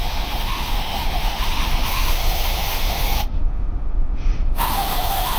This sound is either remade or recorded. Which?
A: remade